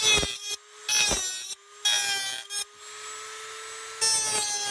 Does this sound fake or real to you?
real